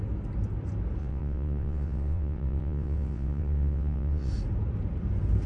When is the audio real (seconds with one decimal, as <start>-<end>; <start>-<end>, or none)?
0.0-1.0; 4.3-5.5